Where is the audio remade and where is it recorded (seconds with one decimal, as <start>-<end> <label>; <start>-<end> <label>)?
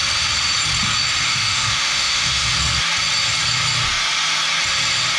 0.0-1.3 recorded; 1.3-2.5 remade; 2.5-5.2 recorded